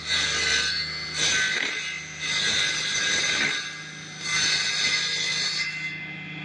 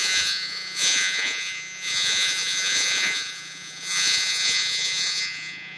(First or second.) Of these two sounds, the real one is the first